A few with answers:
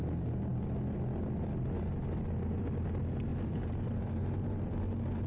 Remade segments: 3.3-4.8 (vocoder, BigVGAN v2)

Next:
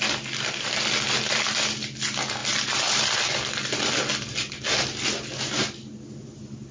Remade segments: none